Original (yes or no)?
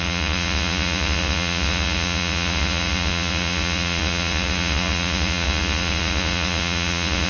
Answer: no